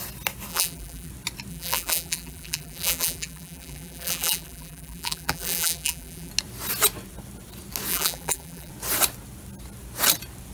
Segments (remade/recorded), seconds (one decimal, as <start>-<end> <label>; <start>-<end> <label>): 0.0-0.5 recorded; 0.5-1.1 remade; 1.1-1.5 recorded; 1.5-6.3 remade; 6.3-7.9 recorded; 7.9-8.7 remade; 8.7-10.5 recorded